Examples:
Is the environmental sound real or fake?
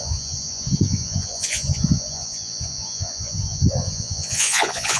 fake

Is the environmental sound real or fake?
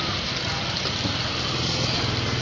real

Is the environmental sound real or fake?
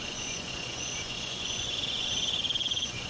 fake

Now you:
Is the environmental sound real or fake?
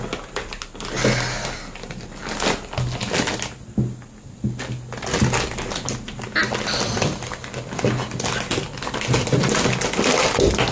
real